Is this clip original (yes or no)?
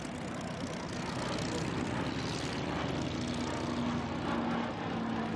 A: yes